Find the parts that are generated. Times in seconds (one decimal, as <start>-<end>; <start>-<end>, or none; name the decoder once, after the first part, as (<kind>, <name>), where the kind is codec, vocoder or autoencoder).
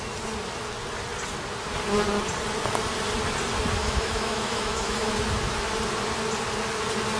3.8-5.1 (autoencoder, DAC-VAE)